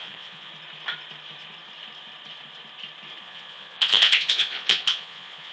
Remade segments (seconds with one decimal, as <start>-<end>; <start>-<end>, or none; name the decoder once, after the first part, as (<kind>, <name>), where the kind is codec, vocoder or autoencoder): 0.0-0.5 (vocoder, Vocos); 3.2-5.5